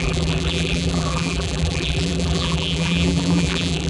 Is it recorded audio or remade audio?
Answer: remade